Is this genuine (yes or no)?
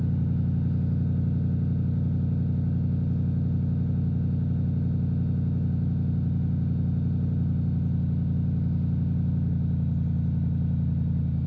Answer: yes